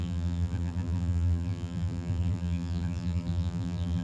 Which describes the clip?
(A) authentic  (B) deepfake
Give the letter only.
B